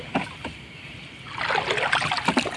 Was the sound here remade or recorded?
recorded